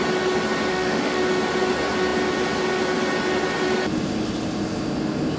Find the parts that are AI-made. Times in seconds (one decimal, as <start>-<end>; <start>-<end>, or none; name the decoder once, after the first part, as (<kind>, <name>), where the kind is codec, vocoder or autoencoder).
0.7-1.2 (autoencoder, DAC-VAE)